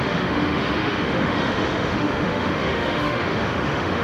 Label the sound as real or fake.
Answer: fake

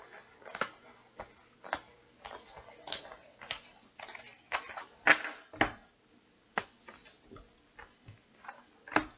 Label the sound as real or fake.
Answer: real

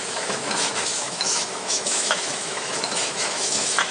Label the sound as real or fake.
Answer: fake